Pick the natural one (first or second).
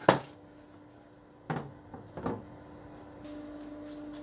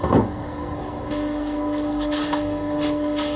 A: first